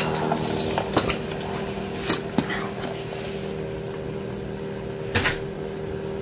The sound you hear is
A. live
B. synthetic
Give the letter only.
A